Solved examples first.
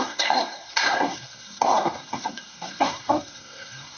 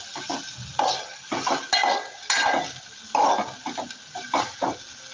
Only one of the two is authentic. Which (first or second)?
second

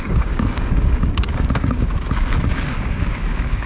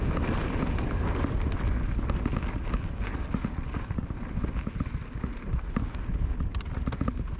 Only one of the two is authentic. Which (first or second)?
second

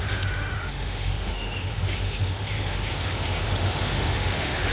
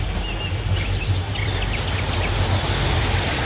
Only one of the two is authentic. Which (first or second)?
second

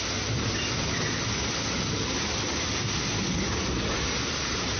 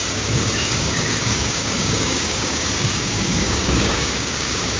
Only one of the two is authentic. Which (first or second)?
first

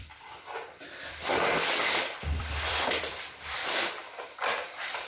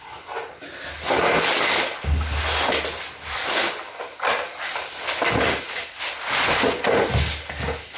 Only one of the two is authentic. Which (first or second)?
second